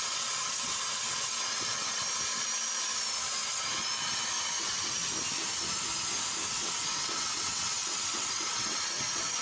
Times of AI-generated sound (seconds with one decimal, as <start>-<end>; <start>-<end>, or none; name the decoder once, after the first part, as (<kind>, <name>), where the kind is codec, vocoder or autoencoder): 0.0-2.0 (vocoder, WaveNeXt); 4.6-5.1; 6.5-9.4